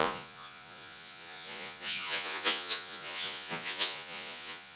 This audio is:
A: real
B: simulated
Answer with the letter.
B